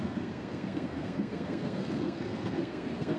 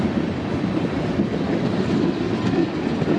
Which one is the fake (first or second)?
first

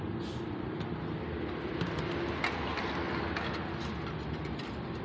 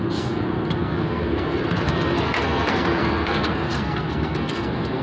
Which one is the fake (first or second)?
second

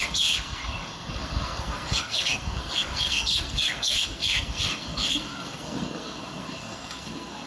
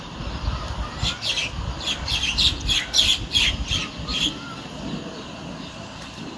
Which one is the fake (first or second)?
first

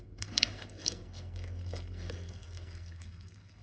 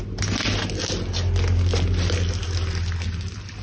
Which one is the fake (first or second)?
first